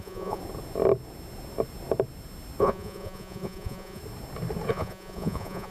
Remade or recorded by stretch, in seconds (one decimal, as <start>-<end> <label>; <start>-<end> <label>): 0.0-0.4 remade; 0.4-2.6 recorded; 2.6-4.0 remade; 4.0-4.7 recorded; 4.7-5.7 remade